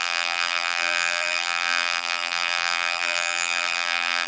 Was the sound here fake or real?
fake